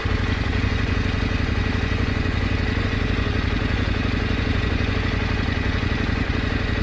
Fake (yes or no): yes